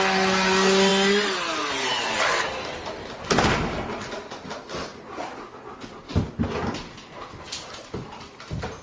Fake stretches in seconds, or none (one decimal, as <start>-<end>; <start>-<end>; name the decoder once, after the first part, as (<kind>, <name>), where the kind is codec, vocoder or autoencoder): none